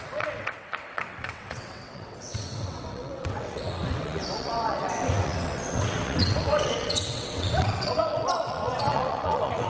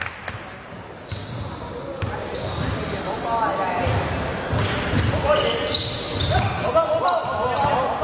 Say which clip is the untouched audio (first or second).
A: second